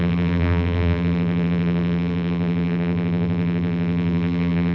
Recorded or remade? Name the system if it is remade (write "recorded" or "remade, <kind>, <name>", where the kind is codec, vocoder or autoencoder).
remade, vocoder, BigVGAN v2